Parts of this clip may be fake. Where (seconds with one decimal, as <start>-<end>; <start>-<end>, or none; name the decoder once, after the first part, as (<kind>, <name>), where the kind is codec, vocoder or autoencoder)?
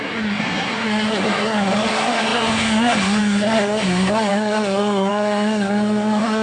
0.0-6.4 (codec, SNAC)